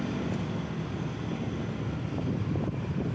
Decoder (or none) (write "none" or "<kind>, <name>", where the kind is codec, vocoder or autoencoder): none